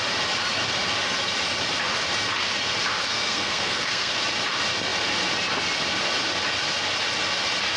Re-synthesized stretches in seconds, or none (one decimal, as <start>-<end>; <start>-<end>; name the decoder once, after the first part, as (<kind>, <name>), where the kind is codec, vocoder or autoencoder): 3.1-4.1 (codec, SNAC)